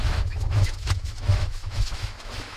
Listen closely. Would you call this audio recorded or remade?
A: remade